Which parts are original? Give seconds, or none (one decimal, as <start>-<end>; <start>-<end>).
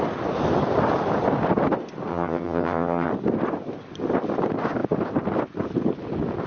0.0-2.1; 3.1-6.5